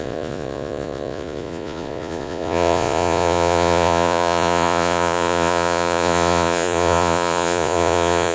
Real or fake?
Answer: fake